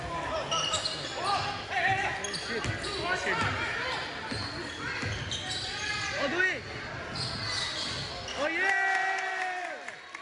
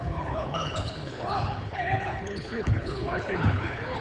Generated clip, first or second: second